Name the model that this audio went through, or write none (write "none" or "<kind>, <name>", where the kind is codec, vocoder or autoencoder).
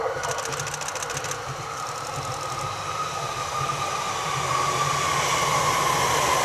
none